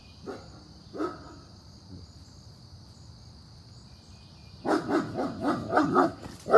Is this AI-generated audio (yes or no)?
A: no